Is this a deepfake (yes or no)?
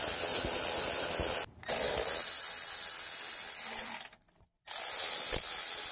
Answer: no